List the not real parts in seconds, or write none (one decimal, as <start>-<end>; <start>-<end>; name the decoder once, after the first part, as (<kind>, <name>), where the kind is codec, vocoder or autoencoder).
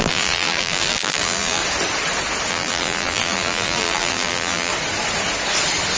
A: 0.0-1.6 (vocoder, BigVGAN v2); 2.5-4.7